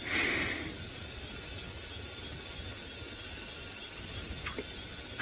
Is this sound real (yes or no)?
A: yes